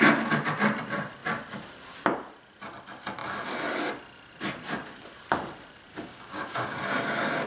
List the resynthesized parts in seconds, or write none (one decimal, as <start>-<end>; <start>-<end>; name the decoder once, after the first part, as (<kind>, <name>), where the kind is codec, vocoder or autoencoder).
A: 5.9-6.8 (codec, DAC)